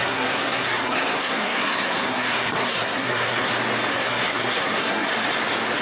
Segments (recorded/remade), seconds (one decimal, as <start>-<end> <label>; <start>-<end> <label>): 0.0-3.5 remade; 3.5-3.9 recorded; 3.9-5.1 remade; 5.1-5.8 recorded